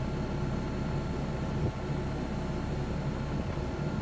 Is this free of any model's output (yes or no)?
yes